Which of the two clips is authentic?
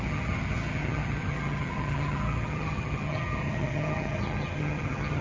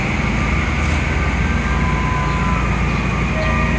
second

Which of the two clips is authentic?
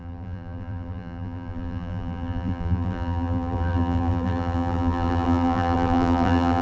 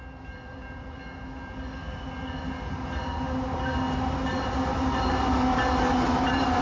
second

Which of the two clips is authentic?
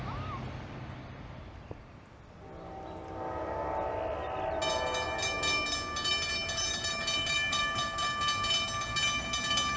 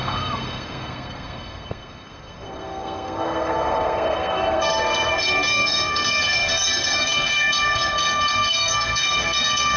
first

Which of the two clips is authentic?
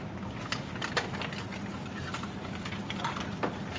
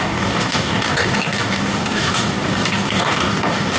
first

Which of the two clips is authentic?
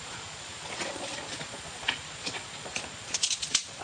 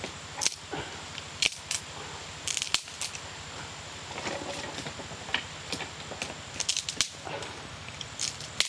second